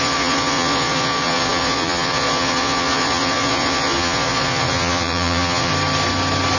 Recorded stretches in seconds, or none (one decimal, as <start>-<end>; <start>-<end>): 5.7-6.6